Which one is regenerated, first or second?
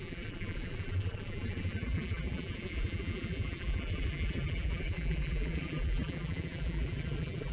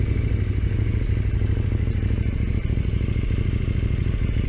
first